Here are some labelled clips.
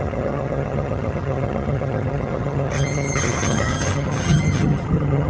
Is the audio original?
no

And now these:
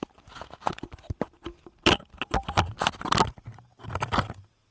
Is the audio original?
yes